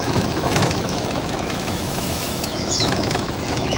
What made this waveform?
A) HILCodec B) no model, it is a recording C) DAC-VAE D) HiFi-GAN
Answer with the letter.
C